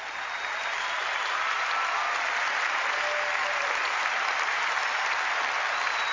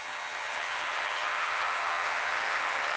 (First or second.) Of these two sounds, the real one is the first